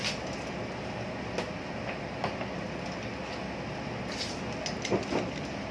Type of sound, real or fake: real